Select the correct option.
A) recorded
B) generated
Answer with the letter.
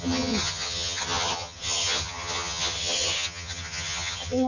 B